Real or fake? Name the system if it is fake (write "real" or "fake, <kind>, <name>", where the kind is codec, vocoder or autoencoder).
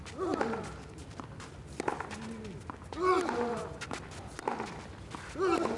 real